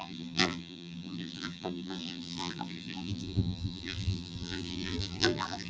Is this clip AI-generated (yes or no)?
yes